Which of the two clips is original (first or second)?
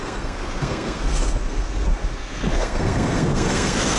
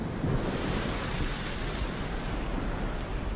second